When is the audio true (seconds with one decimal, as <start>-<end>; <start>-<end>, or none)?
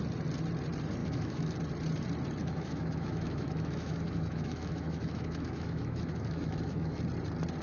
0.0-1.0; 1.5-2.4; 7.0-7.6